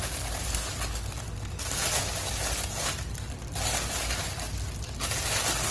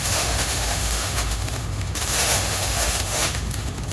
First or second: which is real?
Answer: first